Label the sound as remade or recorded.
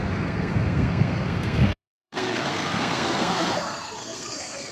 remade